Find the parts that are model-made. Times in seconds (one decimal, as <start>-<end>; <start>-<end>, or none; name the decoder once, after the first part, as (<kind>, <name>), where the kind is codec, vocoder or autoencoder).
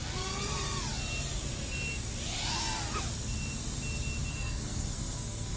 4.3-5.6 (codec, SNAC)